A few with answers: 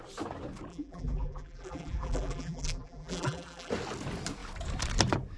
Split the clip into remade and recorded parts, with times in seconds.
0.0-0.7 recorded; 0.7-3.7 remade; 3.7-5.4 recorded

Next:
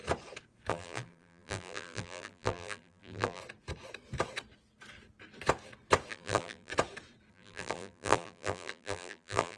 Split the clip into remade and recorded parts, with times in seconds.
0.0-0.7 recorded; 0.7-3.4 remade; 3.4-6.1 recorded; 6.1-6.7 remade; 6.7-7.3 recorded; 7.3-9.6 remade

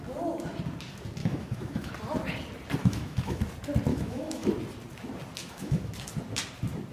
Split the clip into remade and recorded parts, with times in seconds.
0.0-1.2 recorded; 1.2-1.9 remade; 1.9-2.8 recorded; 2.8-3.4 remade; 3.4-3.9 recorded; 3.9-4.5 remade; 4.5-5.4 recorded; 5.4-5.9 remade; 5.9-6.9 recorded